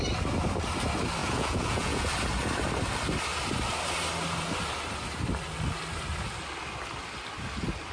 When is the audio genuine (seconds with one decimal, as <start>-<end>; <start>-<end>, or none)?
0.0-1.2; 2.1-7.9